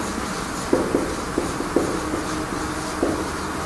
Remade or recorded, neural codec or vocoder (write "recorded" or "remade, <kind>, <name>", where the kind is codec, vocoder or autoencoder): recorded